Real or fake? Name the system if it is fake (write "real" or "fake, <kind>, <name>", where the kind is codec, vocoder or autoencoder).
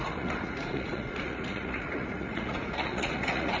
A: fake, vocoder, Vocos